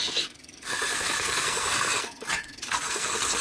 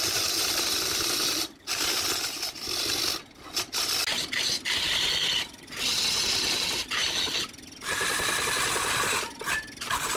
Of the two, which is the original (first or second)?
second